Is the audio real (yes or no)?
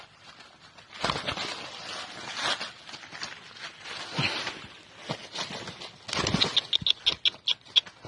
yes